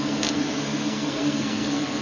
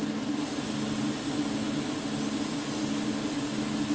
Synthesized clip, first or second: first